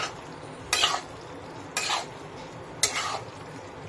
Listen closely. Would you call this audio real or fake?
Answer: real